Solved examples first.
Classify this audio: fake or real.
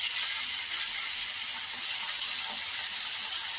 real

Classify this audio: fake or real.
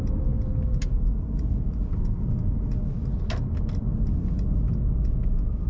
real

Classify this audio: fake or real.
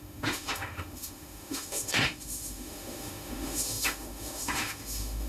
fake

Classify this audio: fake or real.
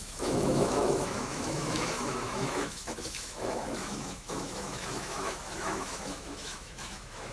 fake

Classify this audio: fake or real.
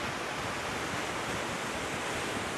real